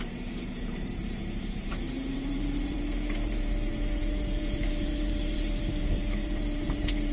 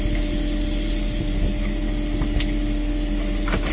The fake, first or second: first